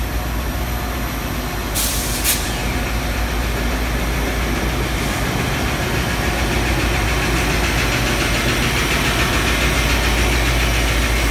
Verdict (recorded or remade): recorded